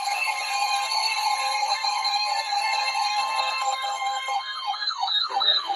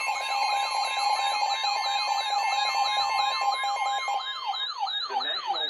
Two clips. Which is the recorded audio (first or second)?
second